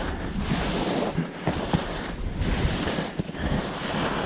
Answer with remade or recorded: recorded